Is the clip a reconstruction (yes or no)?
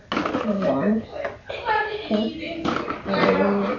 no